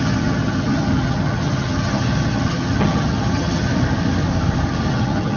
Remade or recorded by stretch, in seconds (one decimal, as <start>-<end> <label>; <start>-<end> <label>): 0.0-3.7 remade; 3.7-4.9 recorded; 4.9-5.4 remade

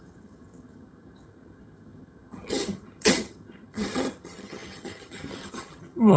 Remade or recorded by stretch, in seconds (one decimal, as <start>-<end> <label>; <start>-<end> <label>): 0.0-6.2 remade

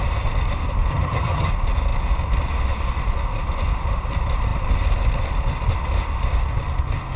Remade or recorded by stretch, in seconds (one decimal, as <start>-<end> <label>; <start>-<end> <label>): 0.0-0.9 recorded; 0.9-1.5 remade; 1.5-7.2 recorded

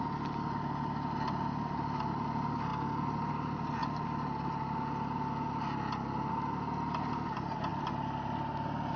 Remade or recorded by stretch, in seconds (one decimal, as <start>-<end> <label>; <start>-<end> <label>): 0.0-9.0 recorded

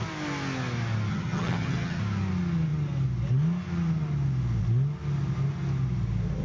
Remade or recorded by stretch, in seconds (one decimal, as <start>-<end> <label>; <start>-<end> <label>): 0.0-1.1 recorded; 1.1-2.0 remade; 2.0-6.4 recorded

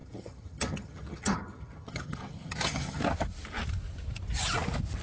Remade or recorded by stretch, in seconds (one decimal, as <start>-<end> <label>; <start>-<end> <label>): 0.0-3.0 remade; 3.0-5.0 recorded

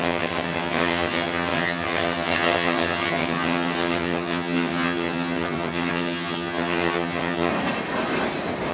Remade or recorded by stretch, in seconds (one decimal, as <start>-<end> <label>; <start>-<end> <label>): 0.0-7.5 remade; 7.5-8.7 recorded